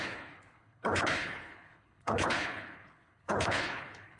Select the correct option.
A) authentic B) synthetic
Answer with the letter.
B